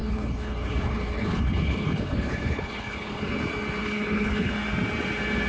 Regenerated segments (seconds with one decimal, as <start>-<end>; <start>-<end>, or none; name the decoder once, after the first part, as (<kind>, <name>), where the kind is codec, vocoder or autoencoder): 0.0-3.3 (codec, HILCodec); 3.8-4.5